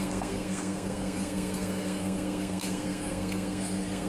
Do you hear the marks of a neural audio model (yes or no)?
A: yes